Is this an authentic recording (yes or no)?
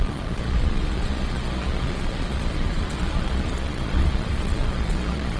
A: no